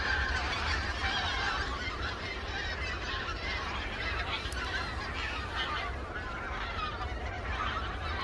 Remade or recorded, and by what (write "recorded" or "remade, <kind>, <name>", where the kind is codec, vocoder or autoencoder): remade, vocoder, BigVGAN v2